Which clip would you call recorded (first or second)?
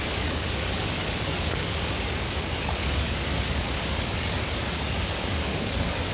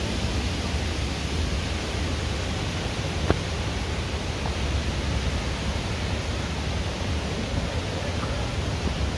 second